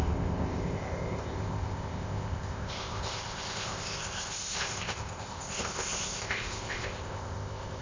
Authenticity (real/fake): fake